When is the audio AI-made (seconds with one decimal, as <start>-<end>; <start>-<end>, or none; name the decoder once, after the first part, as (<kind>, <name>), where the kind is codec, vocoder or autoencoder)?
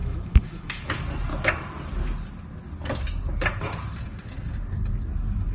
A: 0.0-0.9 (autoencoder, DAC-VAE)